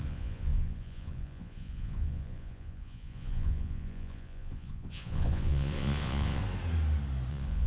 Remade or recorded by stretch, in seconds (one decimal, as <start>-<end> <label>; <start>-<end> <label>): 0.0-6.4 remade; 6.4-7.3 recorded; 7.3-7.7 remade